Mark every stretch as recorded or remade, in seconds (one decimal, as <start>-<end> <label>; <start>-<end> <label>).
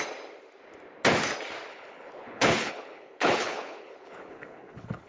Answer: 0.0-1.7 recorded; 1.7-5.1 remade